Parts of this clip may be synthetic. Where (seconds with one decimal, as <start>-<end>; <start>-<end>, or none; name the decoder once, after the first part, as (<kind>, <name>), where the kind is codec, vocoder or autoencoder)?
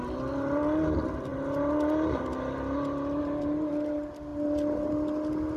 none